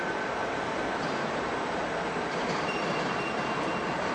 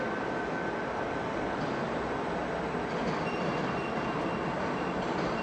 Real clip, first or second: second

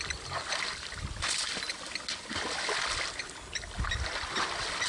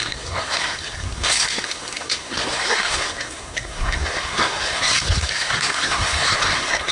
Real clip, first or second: first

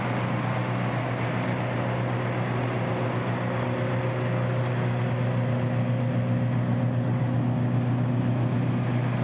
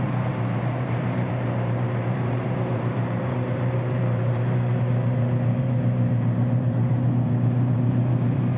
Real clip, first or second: first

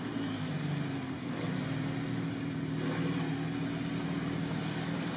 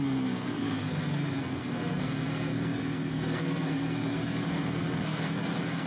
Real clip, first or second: first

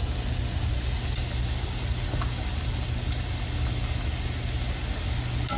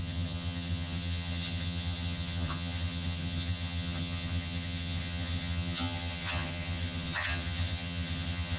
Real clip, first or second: first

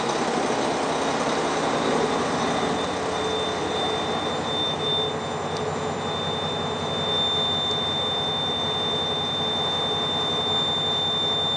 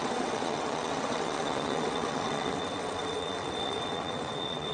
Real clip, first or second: first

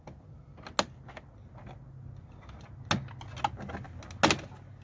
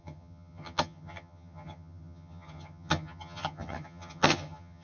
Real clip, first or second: first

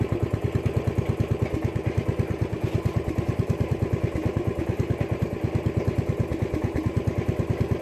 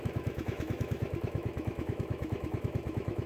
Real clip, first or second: first